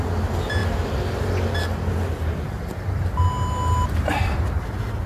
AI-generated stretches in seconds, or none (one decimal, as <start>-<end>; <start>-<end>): none